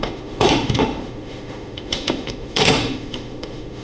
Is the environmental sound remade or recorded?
remade